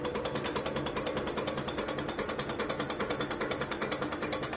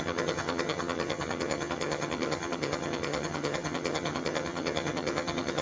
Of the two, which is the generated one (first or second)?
second